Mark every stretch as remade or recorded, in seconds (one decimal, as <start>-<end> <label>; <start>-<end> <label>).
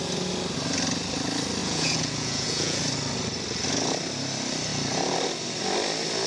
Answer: 0.0-1.6 recorded; 1.6-2.8 remade; 2.8-6.3 recorded